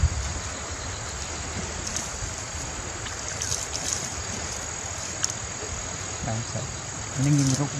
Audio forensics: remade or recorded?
recorded